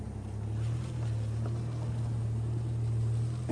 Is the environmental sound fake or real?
real